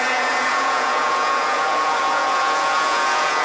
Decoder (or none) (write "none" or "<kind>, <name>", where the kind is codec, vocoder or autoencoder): vocoder, Vocos